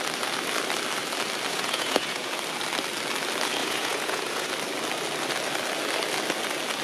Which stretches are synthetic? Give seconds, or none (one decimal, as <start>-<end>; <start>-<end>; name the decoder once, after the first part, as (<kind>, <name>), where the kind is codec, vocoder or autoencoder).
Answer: 1.5-2.3 (vocoder, Vocos); 3.6-4.5